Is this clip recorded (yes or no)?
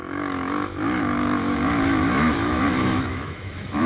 no